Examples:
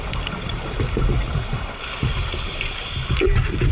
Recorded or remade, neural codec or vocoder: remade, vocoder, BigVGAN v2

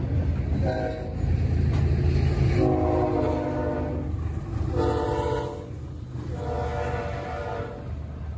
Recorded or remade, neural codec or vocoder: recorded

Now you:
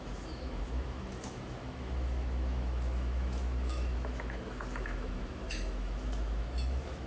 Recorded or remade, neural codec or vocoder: remade, autoencoder, DAC-VAE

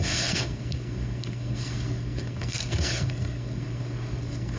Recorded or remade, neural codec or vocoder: remade, codec, SNAC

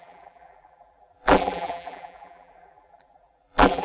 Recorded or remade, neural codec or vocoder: remade, vocoder, BigVGAN v2